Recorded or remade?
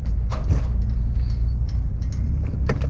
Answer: remade